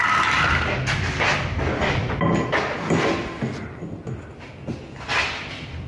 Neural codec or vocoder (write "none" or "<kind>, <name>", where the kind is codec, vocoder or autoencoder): none